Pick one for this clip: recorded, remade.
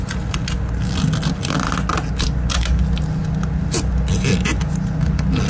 recorded